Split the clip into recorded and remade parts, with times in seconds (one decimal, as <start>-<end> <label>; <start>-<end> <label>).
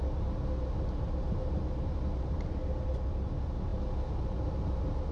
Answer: 0.0-5.1 recorded